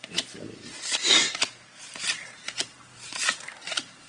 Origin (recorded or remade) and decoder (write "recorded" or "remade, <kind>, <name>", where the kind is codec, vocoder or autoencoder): remade, vocoder, BigVGAN v2